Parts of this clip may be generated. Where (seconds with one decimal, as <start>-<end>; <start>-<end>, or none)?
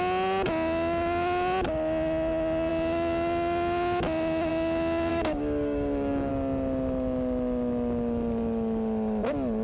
5.1-6.3